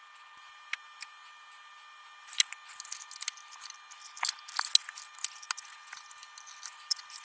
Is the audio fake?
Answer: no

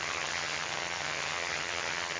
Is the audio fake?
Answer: yes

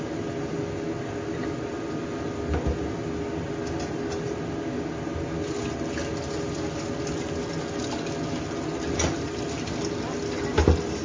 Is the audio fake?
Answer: no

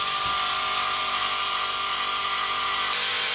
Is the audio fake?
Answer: no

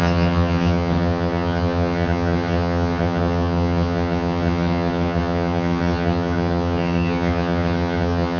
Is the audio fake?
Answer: yes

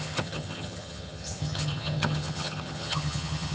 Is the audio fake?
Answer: yes